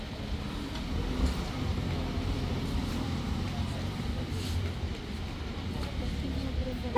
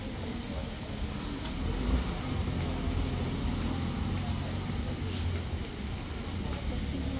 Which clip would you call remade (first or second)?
first